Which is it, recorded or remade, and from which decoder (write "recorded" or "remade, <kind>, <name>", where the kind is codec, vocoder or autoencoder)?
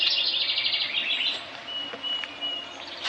recorded